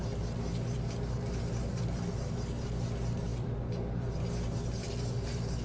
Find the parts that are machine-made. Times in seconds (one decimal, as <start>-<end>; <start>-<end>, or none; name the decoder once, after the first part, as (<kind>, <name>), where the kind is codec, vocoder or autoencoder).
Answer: none